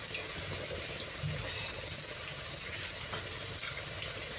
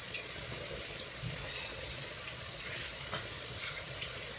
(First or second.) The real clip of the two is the first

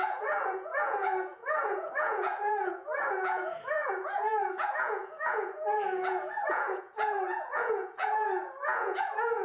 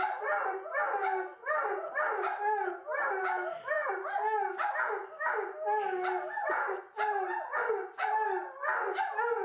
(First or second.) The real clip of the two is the second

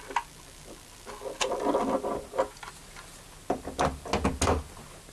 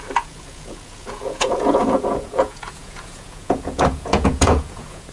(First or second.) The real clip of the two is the first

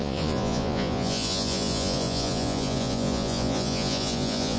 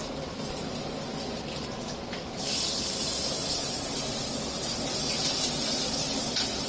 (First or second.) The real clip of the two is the second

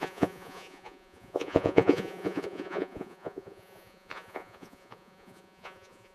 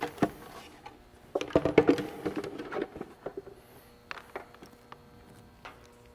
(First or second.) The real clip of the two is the second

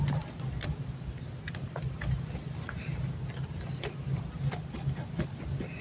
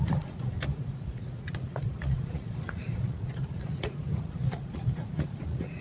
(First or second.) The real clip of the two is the first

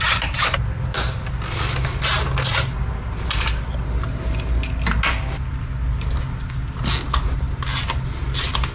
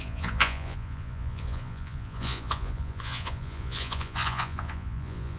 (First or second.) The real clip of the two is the first